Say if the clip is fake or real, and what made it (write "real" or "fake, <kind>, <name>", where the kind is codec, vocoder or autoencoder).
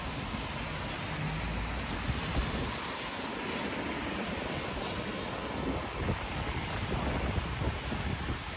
real